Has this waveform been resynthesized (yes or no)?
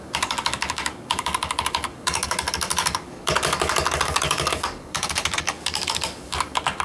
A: yes